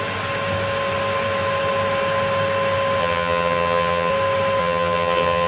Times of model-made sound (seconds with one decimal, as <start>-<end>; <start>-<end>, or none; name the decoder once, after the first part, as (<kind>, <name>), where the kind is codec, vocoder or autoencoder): 3.0-4.1 (vocoder, HiFi-GAN); 4.6-5.5

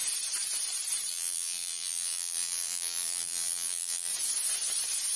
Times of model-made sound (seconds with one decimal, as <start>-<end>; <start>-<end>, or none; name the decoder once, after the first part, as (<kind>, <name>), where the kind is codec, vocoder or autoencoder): 1.1-4.1 (vocoder, BigVGAN v2)